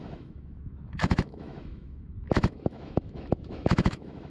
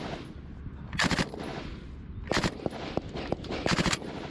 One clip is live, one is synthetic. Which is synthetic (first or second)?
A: first